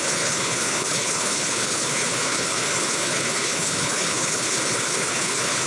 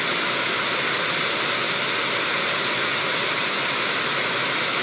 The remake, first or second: first